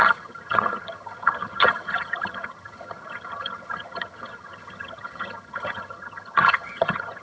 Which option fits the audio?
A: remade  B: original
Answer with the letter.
A